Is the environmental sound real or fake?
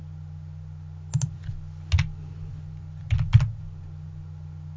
real